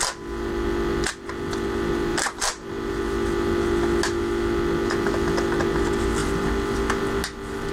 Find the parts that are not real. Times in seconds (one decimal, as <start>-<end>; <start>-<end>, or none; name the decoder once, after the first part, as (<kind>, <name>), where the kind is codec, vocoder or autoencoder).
2.1-2.7 (vocoder, BigVGAN v2); 6.2-7.0